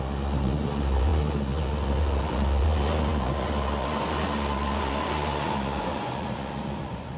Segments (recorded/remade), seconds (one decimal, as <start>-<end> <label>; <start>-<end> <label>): 0.0-7.2 remade